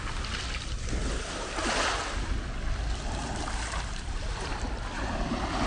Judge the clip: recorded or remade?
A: recorded